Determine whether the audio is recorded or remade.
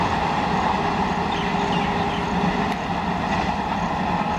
recorded